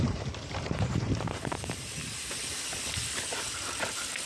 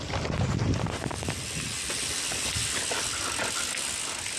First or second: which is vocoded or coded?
first